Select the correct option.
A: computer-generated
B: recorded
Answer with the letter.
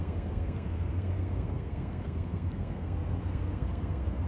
A